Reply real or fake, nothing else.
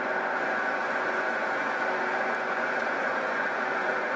fake